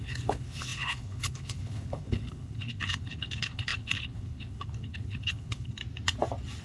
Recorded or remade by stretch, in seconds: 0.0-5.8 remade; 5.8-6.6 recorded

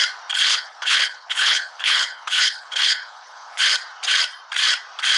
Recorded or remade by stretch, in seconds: 0.0-0.5 recorded; 0.5-3.6 remade; 3.6-5.2 recorded

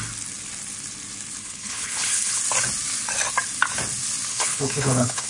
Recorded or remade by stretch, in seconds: 0.0-1.4 recorded; 1.4-2.4 remade; 2.4-4.3 recorded; 4.3-5.3 remade

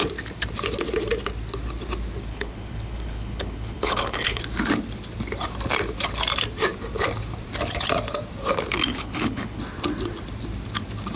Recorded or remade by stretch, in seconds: 0.0-2.3 recorded; 2.3-4.4 remade; 4.4-8.9 recorded; 8.9-9.6 remade; 9.6-11.2 recorded

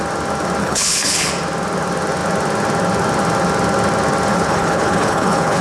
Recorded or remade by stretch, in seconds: 0.0-0.6 recorded; 0.6-1.3 remade; 1.3-4.3 recorded; 4.3-5.6 remade

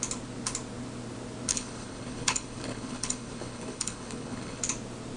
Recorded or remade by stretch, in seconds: 0.0-1.5 recorded; 1.5-4.6 remade; 4.6-5.2 recorded

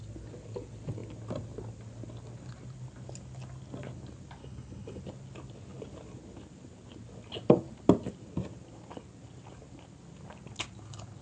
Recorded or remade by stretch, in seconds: 0.0-4.4 recorded; 4.4-5.0 remade; 5.0-11.2 recorded